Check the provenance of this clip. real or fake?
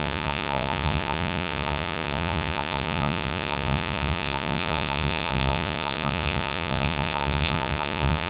fake